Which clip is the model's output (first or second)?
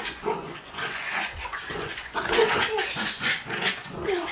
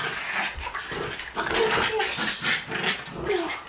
first